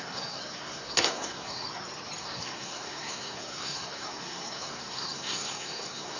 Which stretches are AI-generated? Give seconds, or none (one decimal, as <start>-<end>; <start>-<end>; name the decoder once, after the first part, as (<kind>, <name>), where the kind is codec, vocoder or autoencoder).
0.0-1.6 (codec, SNAC); 2.2-6.2